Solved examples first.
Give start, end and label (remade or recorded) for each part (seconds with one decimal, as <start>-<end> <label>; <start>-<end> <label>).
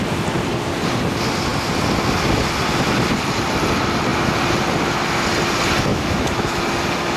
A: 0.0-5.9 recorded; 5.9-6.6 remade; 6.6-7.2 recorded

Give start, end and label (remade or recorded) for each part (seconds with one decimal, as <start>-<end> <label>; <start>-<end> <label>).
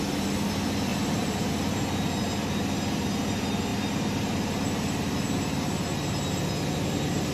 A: 0.0-0.9 recorded; 0.9-1.5 remade; 1.5-7.3 recorded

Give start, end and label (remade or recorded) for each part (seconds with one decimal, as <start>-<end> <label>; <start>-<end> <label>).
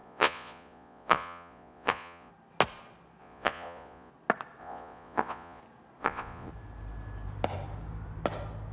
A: 0.0-2.3 remade; 2.3-3.2 recorded; 3.2-4.1 remade; 4.1-4.6 recorded; 4.6-5.6 remade; 5.6-6.0 recorded; 6.0-6.5 remade; 6.5-8.7 recorded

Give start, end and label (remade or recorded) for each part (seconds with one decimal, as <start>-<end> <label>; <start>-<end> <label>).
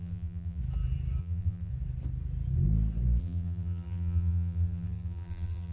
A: 0.0-0.6 remade; 0.6-1.2 recorded; 1.2-1.7 remade; 1.7-3.2 recorded; 3.2-5.7 remade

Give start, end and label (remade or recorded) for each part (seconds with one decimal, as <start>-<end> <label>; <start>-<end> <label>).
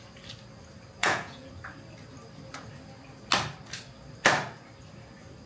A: 0.0-1.0 recorded; 1.0-1.5 remade; 1.5-5.5 recorded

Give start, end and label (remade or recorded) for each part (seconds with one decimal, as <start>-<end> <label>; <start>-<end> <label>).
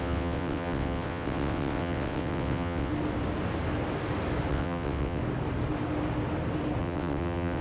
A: 0.0-2.9 remade; 2.9-4.5 recorded; 4.5-5.2 remade; 5.2-6.8 recorded; 6.8-7.6 remade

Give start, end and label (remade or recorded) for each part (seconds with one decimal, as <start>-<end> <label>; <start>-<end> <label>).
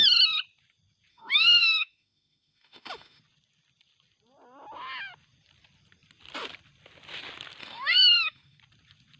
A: 0.0-1.1 recorded; 1.1-3.2 remade; 3.2-7.6 recorded; 7.6-8.6 remade; 8.6-9.2 recorded